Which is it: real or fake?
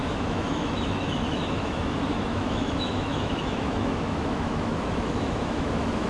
fake